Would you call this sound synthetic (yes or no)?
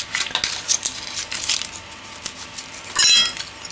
no